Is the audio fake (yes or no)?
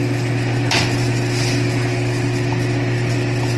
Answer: no